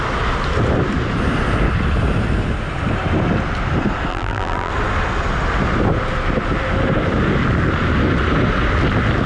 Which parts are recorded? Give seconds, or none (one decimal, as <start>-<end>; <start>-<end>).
0.0-4.1; 4.7-9.3